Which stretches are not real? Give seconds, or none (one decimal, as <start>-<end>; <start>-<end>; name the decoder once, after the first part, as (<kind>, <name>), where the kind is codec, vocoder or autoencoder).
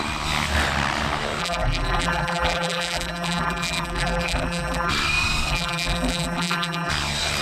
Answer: 1.4-4.9 (vocoder, BigVGAN v2); 5.5-6.9